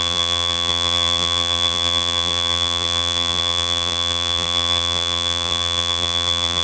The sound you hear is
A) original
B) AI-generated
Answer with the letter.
B